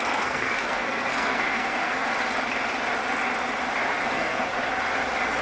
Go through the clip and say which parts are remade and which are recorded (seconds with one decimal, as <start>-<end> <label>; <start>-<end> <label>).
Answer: 0.0-2.1 remade; 2.1-4.1 recorded; 4.1-4.5 remade; 4.5-5.4 recorded